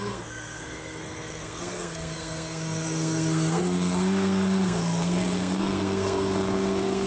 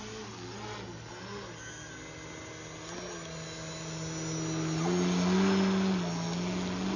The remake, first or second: first